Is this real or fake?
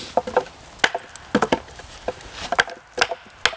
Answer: real